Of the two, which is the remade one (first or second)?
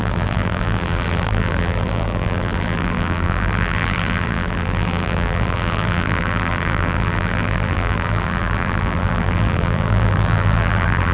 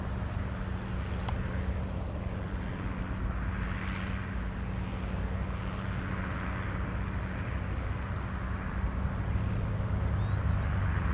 first